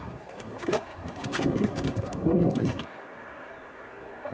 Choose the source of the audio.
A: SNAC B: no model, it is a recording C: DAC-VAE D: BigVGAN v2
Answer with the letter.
A